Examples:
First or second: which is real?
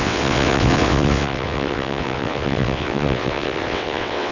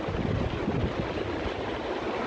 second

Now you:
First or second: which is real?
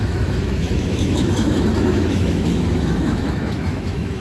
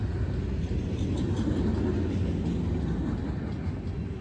second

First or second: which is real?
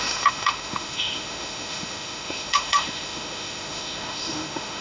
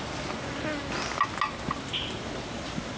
second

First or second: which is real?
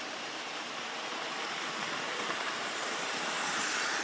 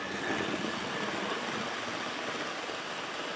second